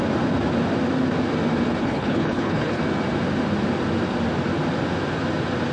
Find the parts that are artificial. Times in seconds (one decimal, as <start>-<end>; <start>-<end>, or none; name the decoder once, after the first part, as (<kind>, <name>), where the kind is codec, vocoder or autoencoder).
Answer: 1.8-2.8 (codec, HILCodec)